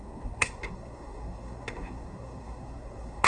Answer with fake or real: fake